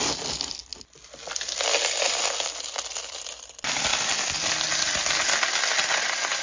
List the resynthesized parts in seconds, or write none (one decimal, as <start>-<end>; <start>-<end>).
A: none